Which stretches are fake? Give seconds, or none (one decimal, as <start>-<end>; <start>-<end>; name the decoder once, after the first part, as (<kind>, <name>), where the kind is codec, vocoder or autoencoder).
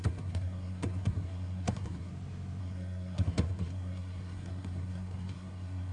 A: 0.0-2.1 (codec, SNAC); 2.6-5.9